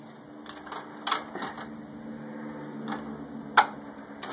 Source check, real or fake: real